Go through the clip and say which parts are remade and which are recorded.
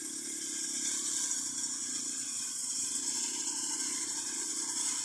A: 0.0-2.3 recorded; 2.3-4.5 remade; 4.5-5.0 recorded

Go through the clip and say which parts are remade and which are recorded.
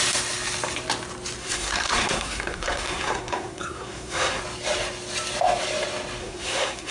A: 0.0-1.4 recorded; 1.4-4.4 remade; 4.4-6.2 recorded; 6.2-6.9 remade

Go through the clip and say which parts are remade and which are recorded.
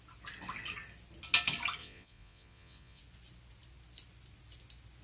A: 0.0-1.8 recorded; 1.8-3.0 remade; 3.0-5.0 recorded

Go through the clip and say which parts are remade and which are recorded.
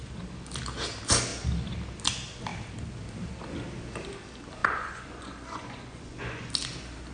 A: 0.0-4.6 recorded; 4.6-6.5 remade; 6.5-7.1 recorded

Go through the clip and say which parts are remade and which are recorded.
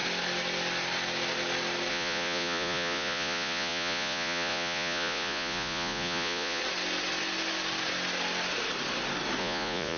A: 0.0-1.9 recorded; 1.9-6.6 remade; 6.6-9.4 recorded; 9.4-10.0 remade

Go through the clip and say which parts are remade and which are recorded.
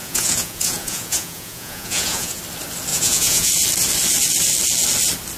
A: 0.0-2.4 remade; 2.4-2.9 recorded; 2.9-3.5 remade; 3.5-5.4 recorded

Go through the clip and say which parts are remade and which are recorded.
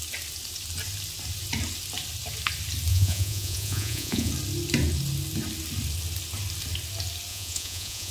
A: 0.0-2.9 recorded; 2.9-4.3 remade; 4.3-7.3 recorded; 7.3-8.1 remade